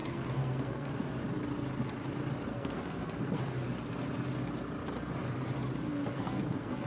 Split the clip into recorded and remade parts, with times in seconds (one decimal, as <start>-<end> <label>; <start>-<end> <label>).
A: 0.0-0.9 remade; 0.9-2.5 recorded; 2.5-3.4 remade; 3.4-5.9 recorded; 5.9-6.9 remade